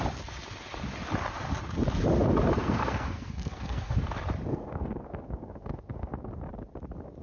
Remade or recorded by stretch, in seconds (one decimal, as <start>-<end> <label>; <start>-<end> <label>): 0.0-2.6 recorded; 2.6-4.0 remade; 4.0-4.5 recorded; 4.5-6.3 remade; 6.3-7.2 recorded